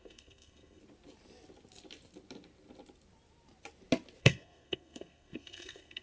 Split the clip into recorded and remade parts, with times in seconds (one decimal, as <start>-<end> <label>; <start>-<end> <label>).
0.0-0.8 remade; 0.8-4.2 recorded; 4.2-6.0 remade